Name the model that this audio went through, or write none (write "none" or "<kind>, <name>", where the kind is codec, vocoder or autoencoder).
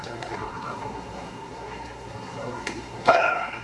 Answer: codec, SNAC